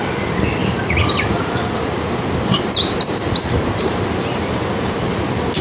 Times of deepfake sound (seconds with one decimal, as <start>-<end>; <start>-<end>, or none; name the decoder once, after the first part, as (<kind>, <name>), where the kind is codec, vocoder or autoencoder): 0.6-4.0 (vocoder, BigVGAN v2)

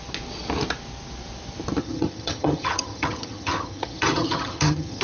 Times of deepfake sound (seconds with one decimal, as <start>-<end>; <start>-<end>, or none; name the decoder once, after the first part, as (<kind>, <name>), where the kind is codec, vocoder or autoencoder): 1.8-5.0 (vocoder, HiFi-GAN)

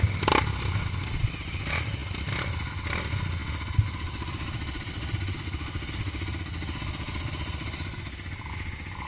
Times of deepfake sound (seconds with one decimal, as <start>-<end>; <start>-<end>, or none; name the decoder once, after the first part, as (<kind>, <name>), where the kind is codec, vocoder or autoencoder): none

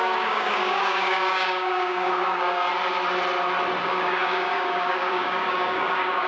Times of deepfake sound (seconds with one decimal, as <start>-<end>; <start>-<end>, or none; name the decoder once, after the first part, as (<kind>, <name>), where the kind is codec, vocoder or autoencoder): 0.0-2.7 (codec, DAC); 3.8-6.3